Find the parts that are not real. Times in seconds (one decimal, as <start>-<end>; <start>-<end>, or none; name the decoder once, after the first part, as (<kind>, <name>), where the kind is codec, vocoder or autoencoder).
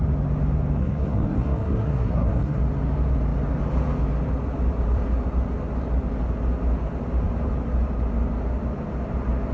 0.8-2.6 (codec, SNAC)